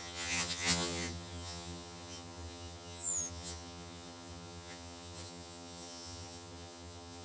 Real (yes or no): no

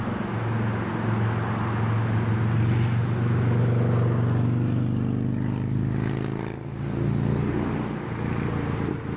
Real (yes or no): yes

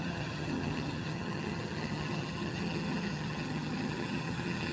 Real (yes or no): no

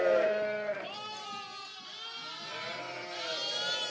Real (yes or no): yes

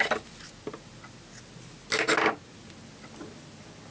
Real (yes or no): yes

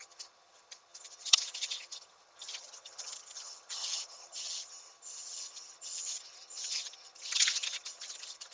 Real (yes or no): no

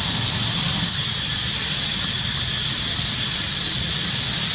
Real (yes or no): yes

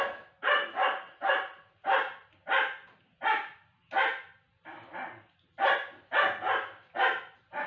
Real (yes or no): yes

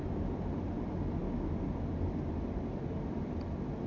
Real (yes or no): yes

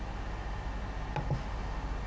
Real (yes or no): yes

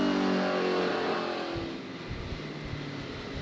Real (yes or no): yes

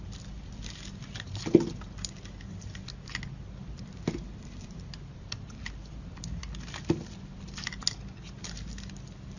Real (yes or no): yes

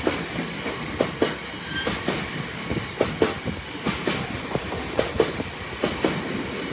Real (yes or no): yes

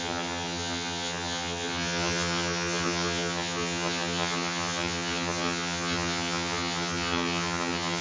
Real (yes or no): no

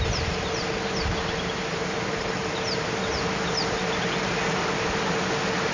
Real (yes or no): yes